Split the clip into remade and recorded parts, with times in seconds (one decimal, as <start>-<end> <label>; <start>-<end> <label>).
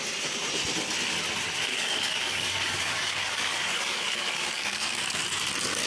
0.0-1.7 recorded; 1.7-5.2 remade; 5.2-5.9 recorded